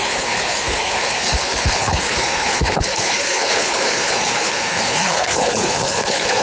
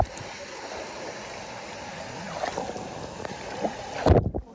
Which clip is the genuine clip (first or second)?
second